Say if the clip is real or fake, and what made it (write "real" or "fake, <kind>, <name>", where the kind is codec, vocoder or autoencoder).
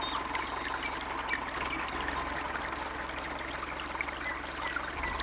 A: real